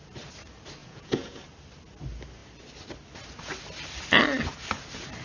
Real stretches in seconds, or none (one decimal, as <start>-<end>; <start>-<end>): 0.0-0.8; 1.4-5.2